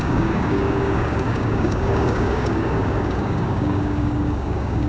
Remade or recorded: remade